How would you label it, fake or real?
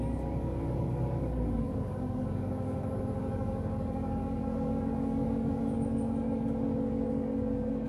fake